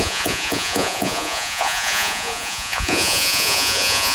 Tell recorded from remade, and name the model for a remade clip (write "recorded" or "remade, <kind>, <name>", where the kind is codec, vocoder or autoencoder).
remade, vocoder, Vocos